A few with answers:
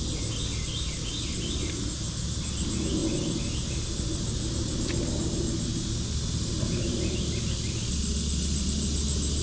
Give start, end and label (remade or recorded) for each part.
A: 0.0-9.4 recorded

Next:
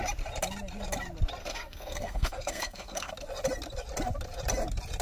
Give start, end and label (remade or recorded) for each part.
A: 0.0-1.4 recorded; 1.4-3.1 remade; 3.1-5.0 recorded

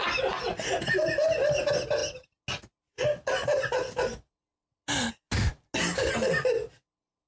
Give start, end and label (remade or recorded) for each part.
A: 0.0-7.3 recorded

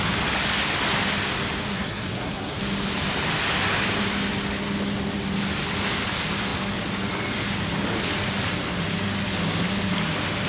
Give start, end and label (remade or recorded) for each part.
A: 0.0-1.7 recorded; 1.7-2.6 remade; 2.6-10.5 recorded